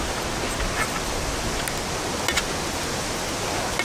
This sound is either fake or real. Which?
real